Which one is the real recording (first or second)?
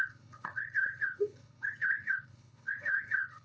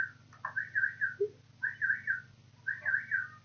second